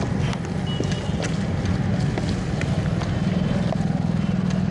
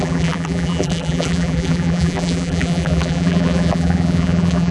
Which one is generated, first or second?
second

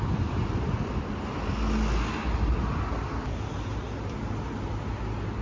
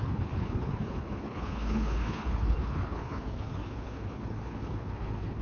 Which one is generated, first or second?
second